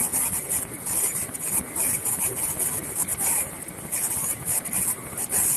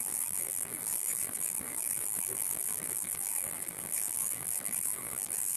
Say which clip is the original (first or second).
first